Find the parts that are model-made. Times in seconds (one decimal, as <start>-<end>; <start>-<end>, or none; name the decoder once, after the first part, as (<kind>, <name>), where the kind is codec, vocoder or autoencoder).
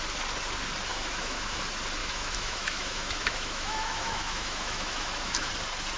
0.9-1.6 (autoencoder, DAC-VAE); 2.0-5.5